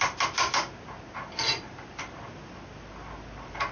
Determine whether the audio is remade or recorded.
recorded